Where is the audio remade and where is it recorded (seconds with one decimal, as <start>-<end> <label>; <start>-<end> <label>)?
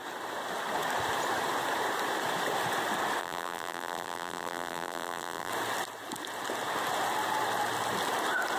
0.0-3.2 recorded; 3.2-5.5 remade; 5.5-8.6 recorded